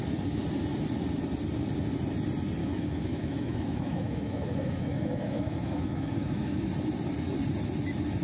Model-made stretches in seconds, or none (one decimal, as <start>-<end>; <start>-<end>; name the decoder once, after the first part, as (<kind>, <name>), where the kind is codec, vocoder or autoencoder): 2.6-6.7 (autoencoder, DAC-VAE)